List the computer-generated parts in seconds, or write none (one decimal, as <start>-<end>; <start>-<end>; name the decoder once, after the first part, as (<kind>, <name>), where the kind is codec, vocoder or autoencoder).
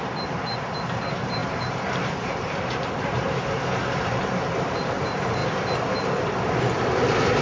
0.0-5.4 (vocoder, BigVGAN v2); 6.6-7.4